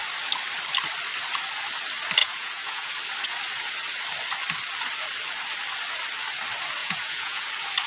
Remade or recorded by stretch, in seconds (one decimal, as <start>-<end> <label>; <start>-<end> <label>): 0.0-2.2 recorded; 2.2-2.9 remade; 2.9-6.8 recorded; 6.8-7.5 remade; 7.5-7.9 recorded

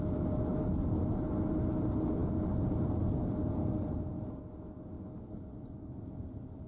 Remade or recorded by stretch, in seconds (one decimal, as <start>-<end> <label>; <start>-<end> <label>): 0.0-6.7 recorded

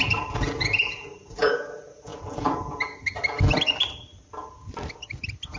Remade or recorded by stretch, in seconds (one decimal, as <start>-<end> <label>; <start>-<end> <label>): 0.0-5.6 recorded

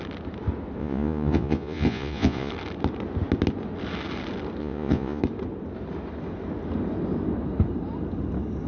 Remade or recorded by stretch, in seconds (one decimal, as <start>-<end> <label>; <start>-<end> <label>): 0.0-0.8 recorded; 0.8-2.5 remade; 2.5-4.6 recorded; 4.6-5.2 remade; 5.2-8.7 recorded